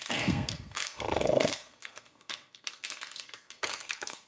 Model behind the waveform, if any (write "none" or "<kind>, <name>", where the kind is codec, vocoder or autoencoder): codec, SNAC